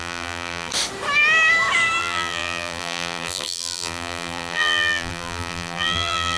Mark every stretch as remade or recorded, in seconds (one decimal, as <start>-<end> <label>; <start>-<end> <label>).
0.0-0.7 remade; 0.7-2.0 recorded; 2.0-6.4 remade